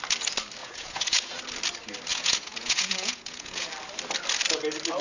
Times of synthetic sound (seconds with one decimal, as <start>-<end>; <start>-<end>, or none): 0.6-1.3; 2.1-3.7